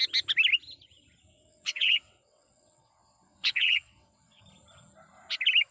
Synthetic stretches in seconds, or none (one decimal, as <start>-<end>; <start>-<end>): 1.3-4.4